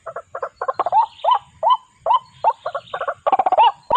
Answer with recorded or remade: recorded